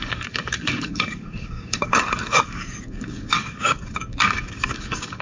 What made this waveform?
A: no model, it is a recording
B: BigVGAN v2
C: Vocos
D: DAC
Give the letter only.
D